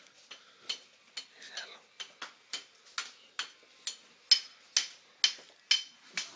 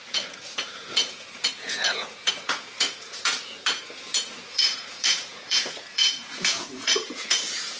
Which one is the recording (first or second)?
first